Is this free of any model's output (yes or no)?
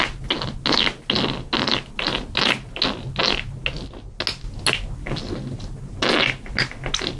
yes